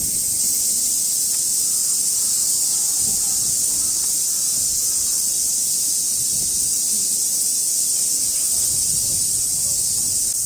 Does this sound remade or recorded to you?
recorded